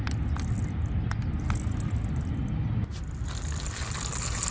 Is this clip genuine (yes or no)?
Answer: yes